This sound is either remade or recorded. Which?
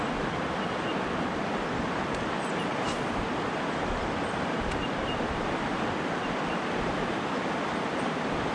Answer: recorded